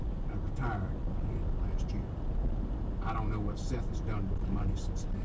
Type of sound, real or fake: real